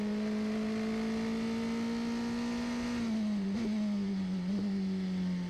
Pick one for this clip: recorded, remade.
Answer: recorded